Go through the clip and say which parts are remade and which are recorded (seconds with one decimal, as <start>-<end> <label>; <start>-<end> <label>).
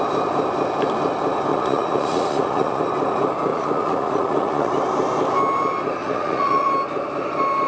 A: 0.0-1.5 recorded; 1.5-2.8 remade; 2.8-3.5 recorded; 3.5-4.7 remade; 4.7-6.0 recorded; 6.0-6.7 remade; 6.7-7.7 recorded